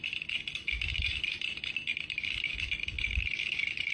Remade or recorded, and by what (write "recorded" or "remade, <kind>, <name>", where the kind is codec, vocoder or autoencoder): recorded